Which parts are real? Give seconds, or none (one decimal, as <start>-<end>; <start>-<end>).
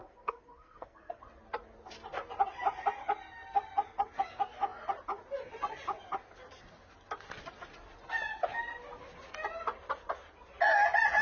1.2-11.2